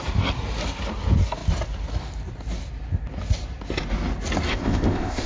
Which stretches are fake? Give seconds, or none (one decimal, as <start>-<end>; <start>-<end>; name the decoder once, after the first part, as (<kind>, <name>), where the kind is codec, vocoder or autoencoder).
4.5-5.3 (codec, ZipCodec)